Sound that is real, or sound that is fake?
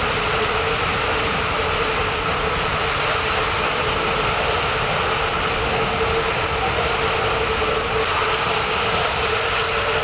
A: real